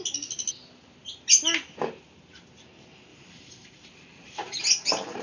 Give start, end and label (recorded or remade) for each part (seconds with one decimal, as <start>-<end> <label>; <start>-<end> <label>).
0.0-3.1 recorded; 3.1-4.6 remade; 4.6-5.2 recorded